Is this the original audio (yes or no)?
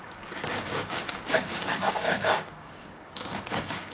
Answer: no